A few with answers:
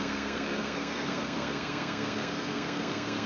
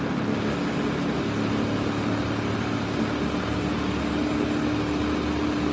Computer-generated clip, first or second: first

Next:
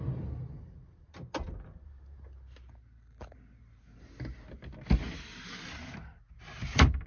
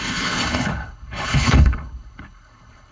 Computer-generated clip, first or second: second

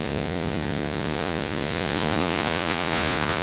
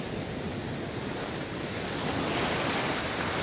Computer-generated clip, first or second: first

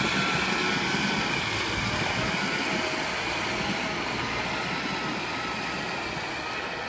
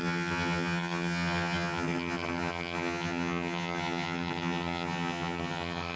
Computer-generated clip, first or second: second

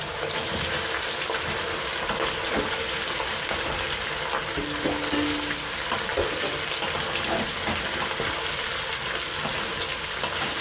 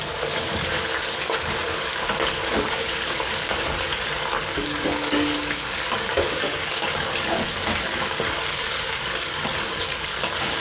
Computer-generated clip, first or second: second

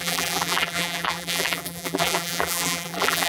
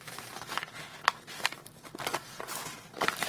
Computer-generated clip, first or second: first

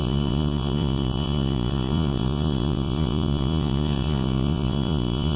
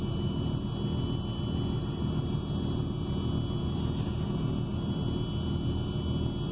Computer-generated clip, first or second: first